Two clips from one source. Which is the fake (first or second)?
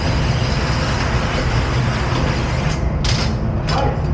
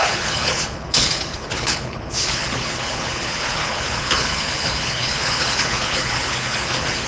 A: second